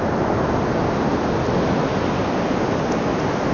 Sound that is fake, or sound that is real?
real